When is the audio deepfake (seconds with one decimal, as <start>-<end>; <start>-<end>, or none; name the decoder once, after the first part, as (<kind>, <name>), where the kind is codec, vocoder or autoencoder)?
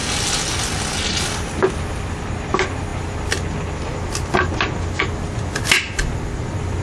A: none